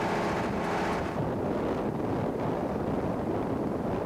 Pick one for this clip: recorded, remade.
recorded